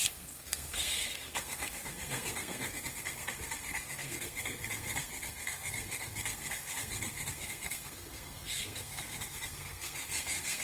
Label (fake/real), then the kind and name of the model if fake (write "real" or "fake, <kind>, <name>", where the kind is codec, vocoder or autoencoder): fake, codec, SNAC